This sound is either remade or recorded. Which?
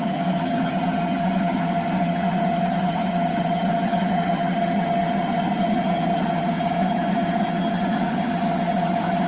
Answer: remade